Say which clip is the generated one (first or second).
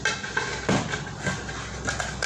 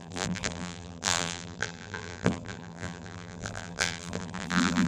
second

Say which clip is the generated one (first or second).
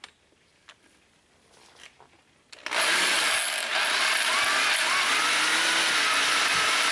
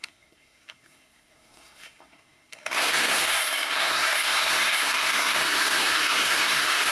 second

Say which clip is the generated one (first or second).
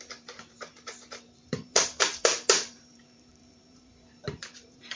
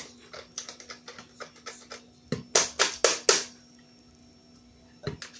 first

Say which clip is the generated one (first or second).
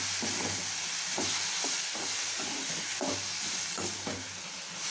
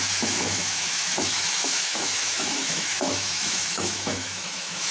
second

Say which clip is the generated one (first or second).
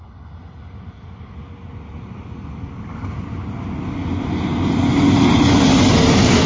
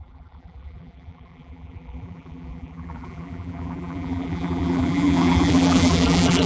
second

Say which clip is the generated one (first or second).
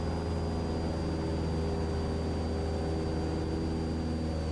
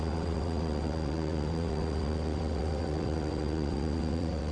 second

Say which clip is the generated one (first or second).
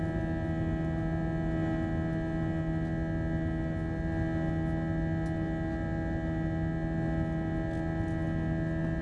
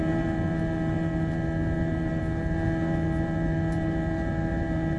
second